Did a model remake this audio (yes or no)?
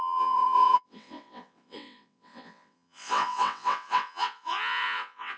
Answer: yes